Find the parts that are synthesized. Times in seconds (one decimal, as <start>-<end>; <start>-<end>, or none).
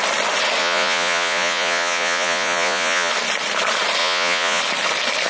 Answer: 0.6-3.1; 4.0-4.6